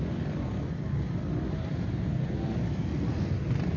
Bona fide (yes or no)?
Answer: yes